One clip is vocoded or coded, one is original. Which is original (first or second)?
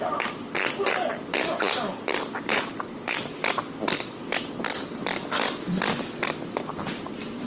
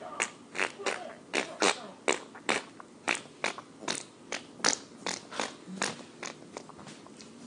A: second